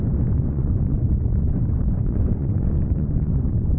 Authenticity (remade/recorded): remade